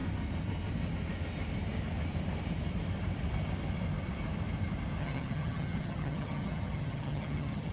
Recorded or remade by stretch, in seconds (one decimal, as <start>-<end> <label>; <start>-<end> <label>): 0.0-5.0 recorded; 5.0-7.7 remade